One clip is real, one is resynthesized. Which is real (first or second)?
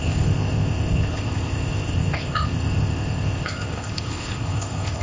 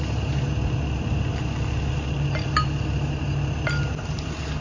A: second